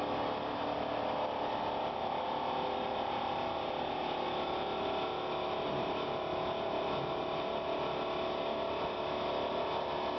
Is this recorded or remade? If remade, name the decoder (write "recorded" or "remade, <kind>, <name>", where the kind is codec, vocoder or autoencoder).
recorded